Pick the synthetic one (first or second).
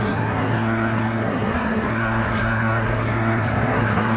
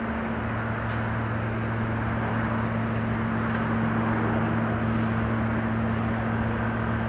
first